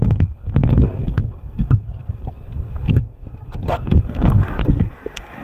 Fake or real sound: fake